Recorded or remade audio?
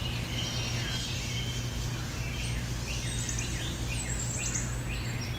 recorded